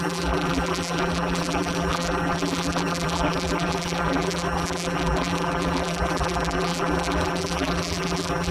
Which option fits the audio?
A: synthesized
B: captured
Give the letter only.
A